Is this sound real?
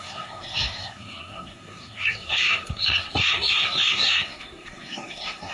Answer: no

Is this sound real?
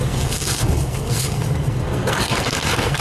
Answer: no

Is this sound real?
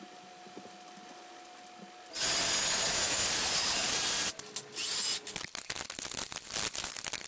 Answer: yes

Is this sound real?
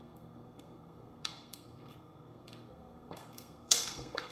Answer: no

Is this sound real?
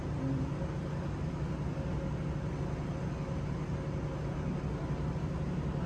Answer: yes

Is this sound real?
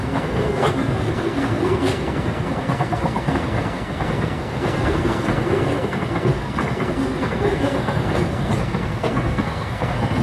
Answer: no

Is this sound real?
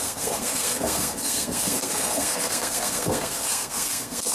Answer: no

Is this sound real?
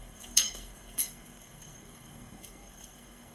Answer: no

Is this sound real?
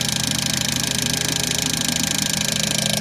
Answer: yes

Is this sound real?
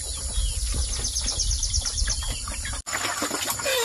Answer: yes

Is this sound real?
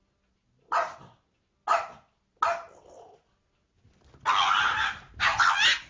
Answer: yes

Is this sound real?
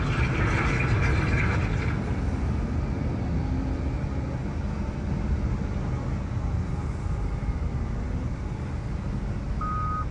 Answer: yes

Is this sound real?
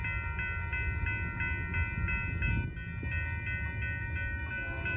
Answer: yes